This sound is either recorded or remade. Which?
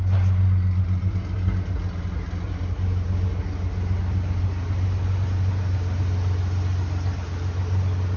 recorded